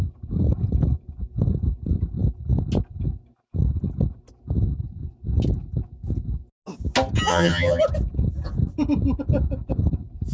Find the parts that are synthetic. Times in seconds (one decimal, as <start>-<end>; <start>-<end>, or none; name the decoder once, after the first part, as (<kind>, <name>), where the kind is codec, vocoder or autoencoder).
7.3-7.8 (vocoder, HiFi-GAN)